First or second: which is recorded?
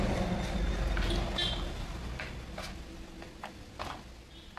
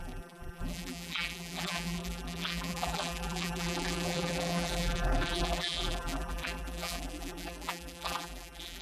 first